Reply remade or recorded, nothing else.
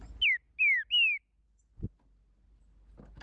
recorded